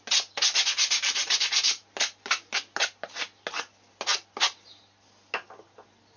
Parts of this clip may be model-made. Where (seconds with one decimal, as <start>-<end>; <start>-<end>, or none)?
none